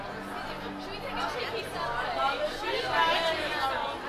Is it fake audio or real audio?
real